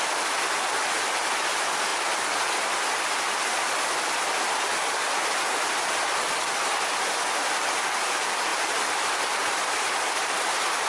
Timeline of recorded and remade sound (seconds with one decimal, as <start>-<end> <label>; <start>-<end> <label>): 0.0-10.9 recorded